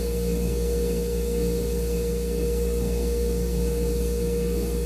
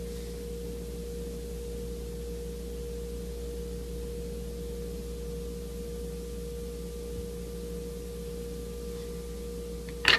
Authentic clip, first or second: second